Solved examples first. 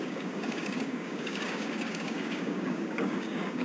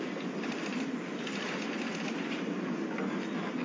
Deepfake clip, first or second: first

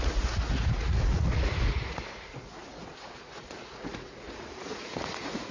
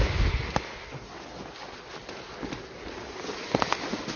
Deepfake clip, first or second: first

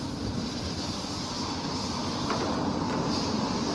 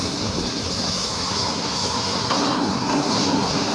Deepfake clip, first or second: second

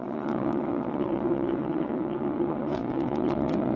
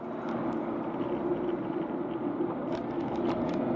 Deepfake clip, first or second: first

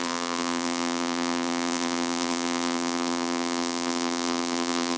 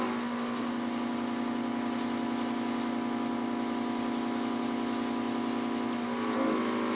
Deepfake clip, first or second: first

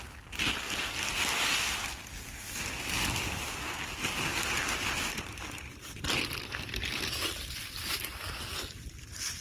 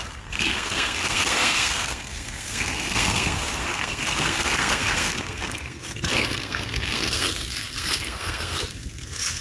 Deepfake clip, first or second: second